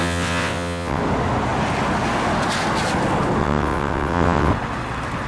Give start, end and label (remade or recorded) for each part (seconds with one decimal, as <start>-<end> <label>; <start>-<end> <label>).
0.0-1.0 remade; 1.0-3.4 recorded; 3.4-4.5 remade; 4.5-5.3 recorded